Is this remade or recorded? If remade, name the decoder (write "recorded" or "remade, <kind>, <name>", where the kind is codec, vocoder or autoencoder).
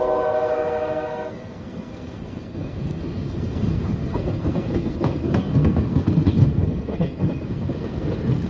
remade, codec, SNAC